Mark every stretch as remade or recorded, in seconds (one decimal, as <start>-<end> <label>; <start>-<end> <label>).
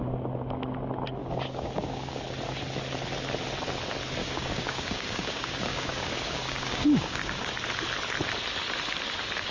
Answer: 0.0-1.2 recorded; 1.2-2.2 remade; 2.2-4.2 recorded; 4.2-7.5 remade; 7.5-9.5 recorded